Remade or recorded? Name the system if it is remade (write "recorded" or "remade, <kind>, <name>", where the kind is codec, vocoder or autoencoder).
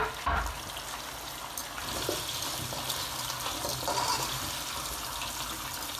recorded